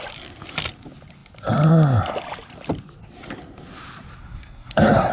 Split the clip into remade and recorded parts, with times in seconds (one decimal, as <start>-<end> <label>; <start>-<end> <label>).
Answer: 0.0-4.2 recorded; 4.2-5.1 remade